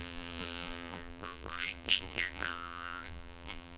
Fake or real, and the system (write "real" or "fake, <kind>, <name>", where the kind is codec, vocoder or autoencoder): fake, vocoder, BigVGAN v2